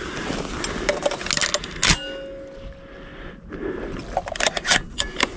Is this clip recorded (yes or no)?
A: yes